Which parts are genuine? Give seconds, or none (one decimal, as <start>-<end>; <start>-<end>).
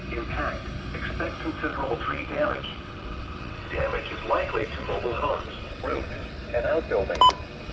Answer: 0.0-1.7; 6.3-7.7